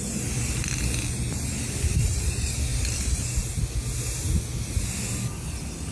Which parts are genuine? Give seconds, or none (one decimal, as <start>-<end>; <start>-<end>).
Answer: 0.0-5.9